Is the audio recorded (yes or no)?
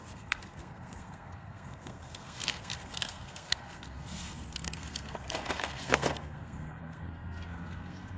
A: no